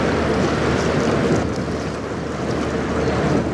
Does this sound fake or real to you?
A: real